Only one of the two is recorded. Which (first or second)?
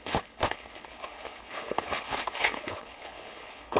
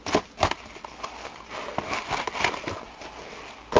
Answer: second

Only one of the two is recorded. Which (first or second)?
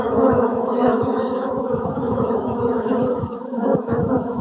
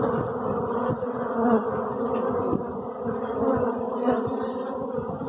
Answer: second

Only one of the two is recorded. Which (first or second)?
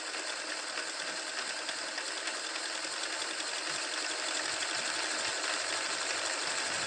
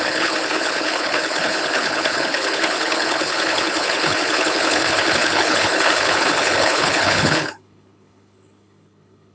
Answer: first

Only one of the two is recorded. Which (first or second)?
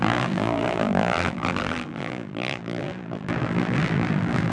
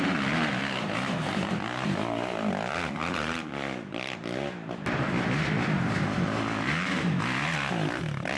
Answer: second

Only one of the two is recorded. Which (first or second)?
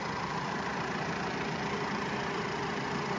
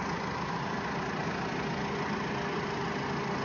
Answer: second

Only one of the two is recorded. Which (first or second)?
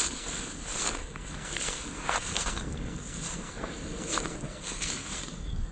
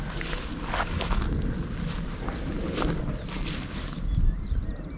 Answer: second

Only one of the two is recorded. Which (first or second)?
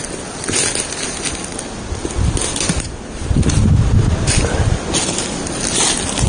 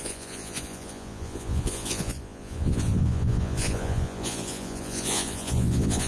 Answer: first